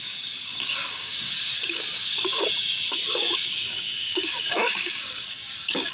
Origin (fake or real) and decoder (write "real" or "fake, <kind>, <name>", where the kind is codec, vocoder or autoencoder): fake, codec, DAC